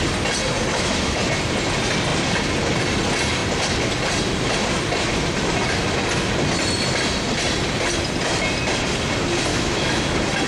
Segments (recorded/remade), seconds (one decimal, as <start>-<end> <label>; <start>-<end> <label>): 0.0-0.7 recorded; 0.7-1.2 remade; 1.2-9.5 recorded; 9.5-10.0 remade; 10.0-10.5 recorded